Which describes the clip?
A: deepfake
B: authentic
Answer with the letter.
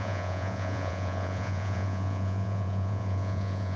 A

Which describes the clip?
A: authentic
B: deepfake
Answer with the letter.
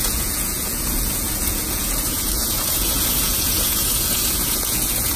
B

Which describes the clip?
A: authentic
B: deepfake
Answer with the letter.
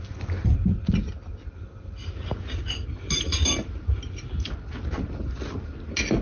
A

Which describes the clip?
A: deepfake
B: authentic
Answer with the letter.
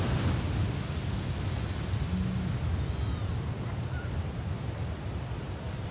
B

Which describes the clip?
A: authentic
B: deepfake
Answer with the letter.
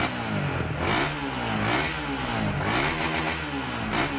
A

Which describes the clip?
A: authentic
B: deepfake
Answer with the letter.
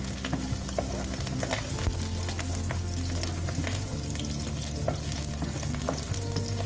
A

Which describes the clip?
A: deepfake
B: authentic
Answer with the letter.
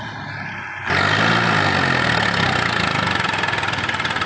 B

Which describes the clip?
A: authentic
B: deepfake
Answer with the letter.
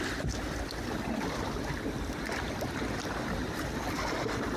A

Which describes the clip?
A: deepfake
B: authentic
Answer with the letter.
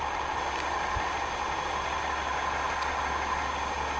B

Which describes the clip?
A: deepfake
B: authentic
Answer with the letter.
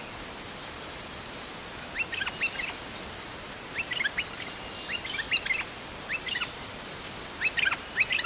B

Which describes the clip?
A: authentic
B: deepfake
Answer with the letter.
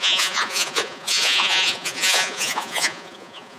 B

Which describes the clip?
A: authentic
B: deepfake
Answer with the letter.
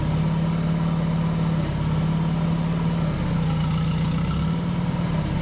A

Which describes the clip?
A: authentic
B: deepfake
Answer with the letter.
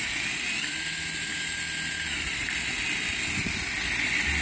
A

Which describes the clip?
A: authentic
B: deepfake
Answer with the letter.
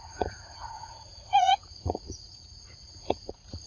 B